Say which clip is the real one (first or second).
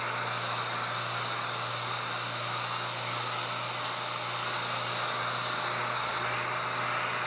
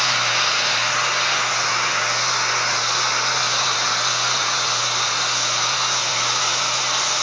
first